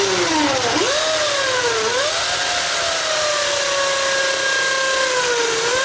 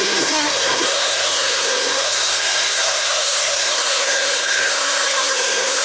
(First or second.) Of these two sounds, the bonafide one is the first